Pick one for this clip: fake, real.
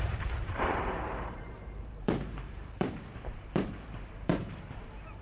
fake